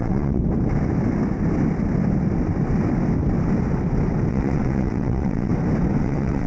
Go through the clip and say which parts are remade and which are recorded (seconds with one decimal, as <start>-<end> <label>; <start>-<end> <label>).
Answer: 0.0-0.4 remade; 0.4-4.3 recorded; 4.3-5.5 remade; 5.5-6.0 recorded; 6.0-6.5 remade